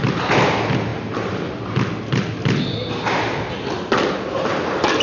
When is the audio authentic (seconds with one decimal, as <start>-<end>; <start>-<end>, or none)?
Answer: 0.0-0.9; 1.5-5.0